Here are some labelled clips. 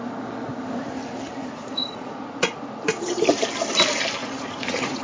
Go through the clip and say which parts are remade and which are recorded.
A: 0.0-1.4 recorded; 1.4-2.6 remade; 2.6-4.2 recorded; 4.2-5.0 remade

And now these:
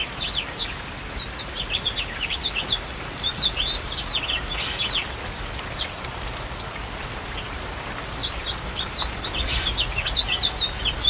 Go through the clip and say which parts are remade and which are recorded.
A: 0.0-5.0 recorded; 5.0-6.6 remade; 6.6-8.2 recorded; 8.2-8.9 remade; 8.9-11.1 recorded

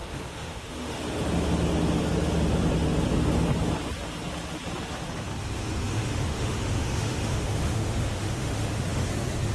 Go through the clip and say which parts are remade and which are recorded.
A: 0.0-1.0 remade; 1.0-6.0 recorded; 6.0-9.1 remade; 9.1-9.5 recorded

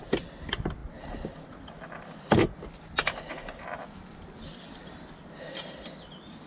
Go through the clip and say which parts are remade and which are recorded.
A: 0.0-6.5 recorded

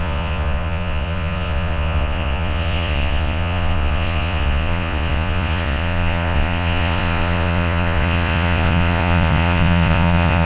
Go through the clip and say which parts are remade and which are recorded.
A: 0.0-10.5 remade

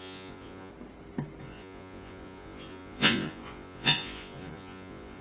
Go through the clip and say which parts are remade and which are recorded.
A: 0.0-0.7 remade; 0.7-1.4 recorded; 1.4-5.2 remade

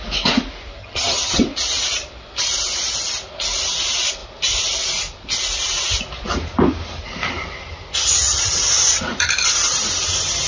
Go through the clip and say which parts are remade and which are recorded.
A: 0.0-0.8 recorded; 0.8-1.4 remade; 1.4-10.5 recorded

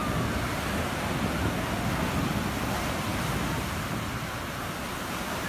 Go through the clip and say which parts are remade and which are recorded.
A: 0.0-5.5 recorded